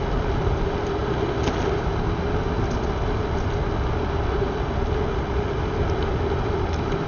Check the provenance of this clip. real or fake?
real